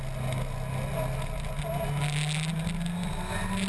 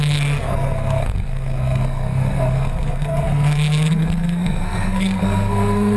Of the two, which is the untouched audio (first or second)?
first